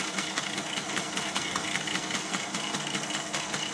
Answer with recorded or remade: remade